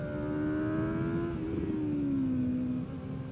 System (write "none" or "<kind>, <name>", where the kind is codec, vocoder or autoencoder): none